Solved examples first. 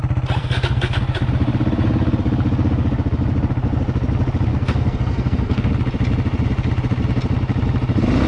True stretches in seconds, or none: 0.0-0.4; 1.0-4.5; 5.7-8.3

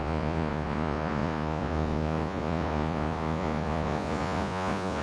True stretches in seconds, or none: none

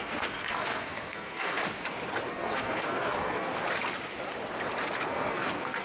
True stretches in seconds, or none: 1.6-2.3; 3.5-5.1

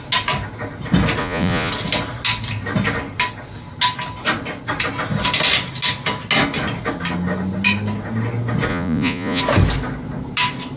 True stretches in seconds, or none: 0.0-1.2; 1.7-8.7; 9.4-10.8

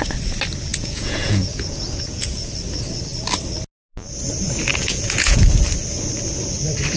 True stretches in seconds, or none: 0.0-0.7; 2.5-4.7; 5.5-7.0

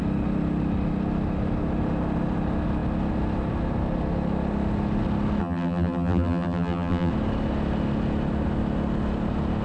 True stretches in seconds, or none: 0.0-5.4; 7.1-9.6

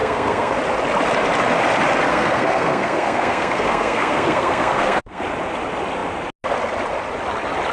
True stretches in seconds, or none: 0.6-2.1; 5.2-7.7

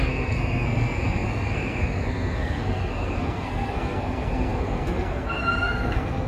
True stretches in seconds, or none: none